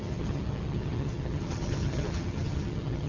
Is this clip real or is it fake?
fake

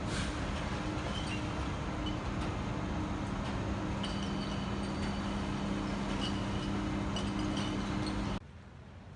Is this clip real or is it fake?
real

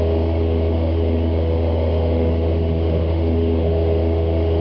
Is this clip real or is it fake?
fake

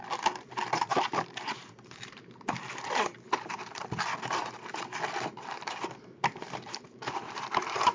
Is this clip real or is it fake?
fake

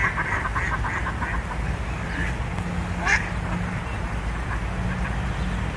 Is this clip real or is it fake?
real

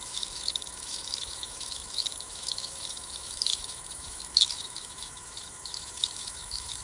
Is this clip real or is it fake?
fake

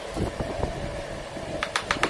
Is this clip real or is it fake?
real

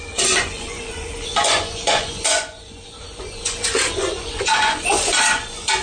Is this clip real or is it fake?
fake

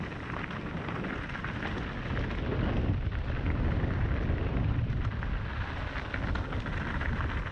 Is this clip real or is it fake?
real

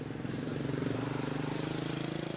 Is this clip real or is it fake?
fake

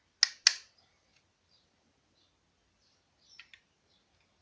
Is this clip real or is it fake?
real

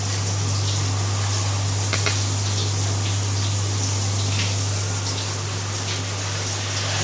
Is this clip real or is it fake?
real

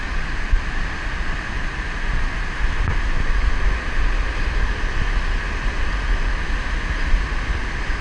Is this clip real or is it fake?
real